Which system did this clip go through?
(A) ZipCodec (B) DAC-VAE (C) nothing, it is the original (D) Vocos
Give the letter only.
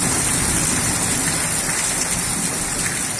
C